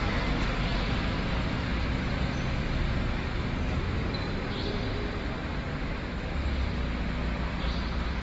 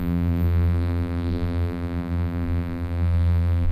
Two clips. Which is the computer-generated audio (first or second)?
second